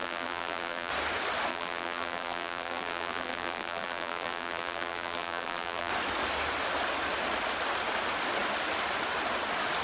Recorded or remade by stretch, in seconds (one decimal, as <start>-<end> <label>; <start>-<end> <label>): 0.0-0.9 remade; 0.9-1.5 recorded; 1.5-5.9 remade; 5.9-9.8 recorded